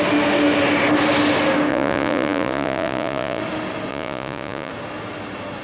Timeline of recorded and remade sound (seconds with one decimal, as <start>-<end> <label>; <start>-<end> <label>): 0.0-1.7 recorded; 1.7-3.4 remade; 3.4-3.9 recorded; 3.9-4.7 remade; 4.7-5.6 recorded

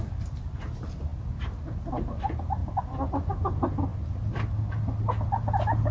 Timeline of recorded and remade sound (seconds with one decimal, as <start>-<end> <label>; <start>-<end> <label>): 0.0-5.9 recorded

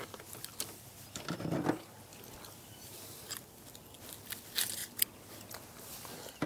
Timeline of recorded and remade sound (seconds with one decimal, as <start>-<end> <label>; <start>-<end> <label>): 0.0-6.5 recorded

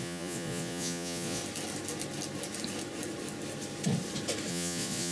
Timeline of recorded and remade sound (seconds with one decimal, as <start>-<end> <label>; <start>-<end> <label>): 0.0-1.4 remade; 1.4-4.5 recorded; 4.5-5.1 remade

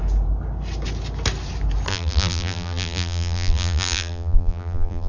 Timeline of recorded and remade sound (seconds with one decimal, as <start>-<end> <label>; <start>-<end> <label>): 0.0-1.9 recorded; 1.9-5.1 remade

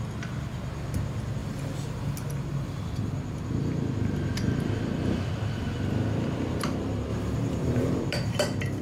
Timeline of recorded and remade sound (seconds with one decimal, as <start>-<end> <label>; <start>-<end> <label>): 0.0-1.4 recorded; 1.4-2.0 remade; 2.0-7.1 recorded; 7.1-8.4 remade; 8.4-8.8 recorded